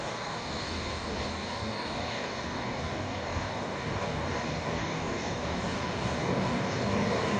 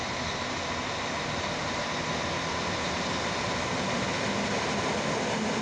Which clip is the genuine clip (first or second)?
second